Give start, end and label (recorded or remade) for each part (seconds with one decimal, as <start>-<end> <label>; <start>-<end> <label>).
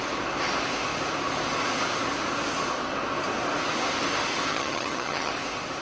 0.0-4.5 recorded; 4.5-5.3 remade; 5.3-5.8 recorded